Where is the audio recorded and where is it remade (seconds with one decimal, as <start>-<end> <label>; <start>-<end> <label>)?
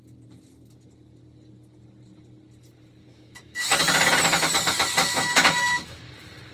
0.0-3.1 recorded; 3.1-3.6 remade; 3.6-5.0 recorded; 5.0-6.1 remade; 6.1-6.5 recorded